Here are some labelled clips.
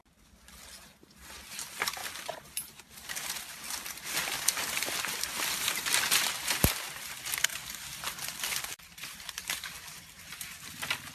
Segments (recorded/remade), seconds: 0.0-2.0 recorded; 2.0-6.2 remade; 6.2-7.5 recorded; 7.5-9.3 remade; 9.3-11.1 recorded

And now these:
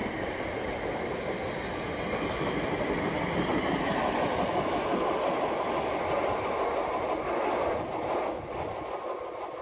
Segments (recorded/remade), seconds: 0.0-9.6 recorded

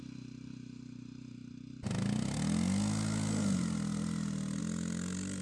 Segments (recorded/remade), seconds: 0.0-5.4 recorded

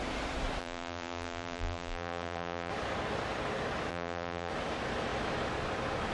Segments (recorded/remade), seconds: 0.0-0.6 recorded; 0.6-2.7 remade; 2.7-3.9 recorded; 3.9-4.5 remade; 4.5-6.1 recorded

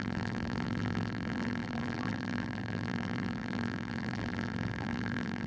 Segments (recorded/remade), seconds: 0.0-5.5 remade

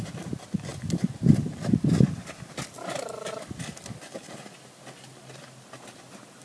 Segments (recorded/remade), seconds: 0.0-0.7 recorded; 0.7-4.5 remade; 4.5-6.4 recorded

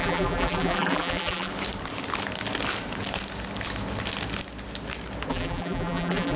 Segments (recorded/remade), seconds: 0.0-1.5 remade; 1.5-5.3 recorded; 5.3-6.4 remade